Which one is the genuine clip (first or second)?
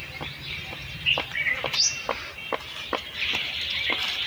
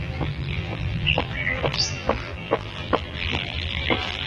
first